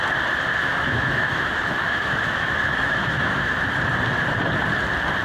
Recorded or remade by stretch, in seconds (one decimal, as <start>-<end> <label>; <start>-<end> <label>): 0.0-0.5 recorded; 0.5-3.6 remade; 3.6-5.2 recorded